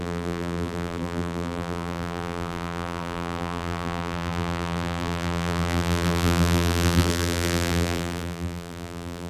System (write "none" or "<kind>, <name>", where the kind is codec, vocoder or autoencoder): vocoder, BigVGAN v2